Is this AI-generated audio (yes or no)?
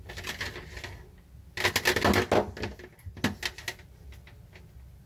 no